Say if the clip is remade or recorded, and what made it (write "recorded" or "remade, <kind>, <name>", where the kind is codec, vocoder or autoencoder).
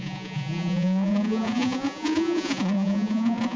remade, vocoder, Vocos